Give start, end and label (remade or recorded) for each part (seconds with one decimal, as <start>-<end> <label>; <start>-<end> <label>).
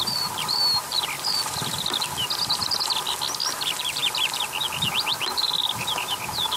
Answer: 0.0-4.0 remade; 4.0-4.9 recorded; 4.9-6.6 remade